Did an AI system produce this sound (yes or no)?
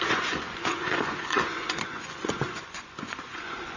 yes